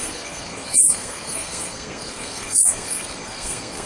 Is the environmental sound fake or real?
fake